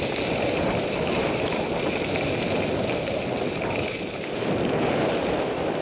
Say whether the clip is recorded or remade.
recorded